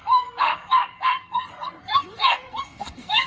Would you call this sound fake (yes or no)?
yes